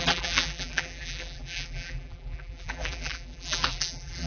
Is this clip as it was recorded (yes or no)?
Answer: no